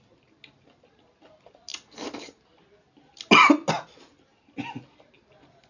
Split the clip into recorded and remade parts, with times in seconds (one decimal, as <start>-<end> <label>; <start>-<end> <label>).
0.0-5.7 recorded